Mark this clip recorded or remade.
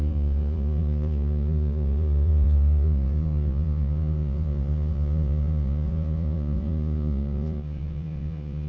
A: remade